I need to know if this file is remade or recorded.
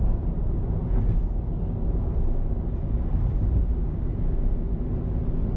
recorded